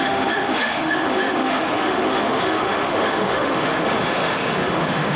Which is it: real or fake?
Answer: fake